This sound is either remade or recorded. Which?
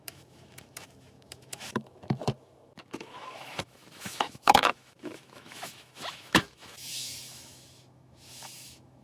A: remade